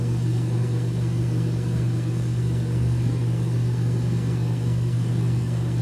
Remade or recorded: remade